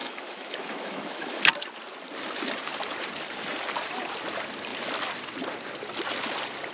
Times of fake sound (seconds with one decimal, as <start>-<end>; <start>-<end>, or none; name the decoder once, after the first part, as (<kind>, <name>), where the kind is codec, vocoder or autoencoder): 0.0-1.4 (autoencoder, DAC-VAE)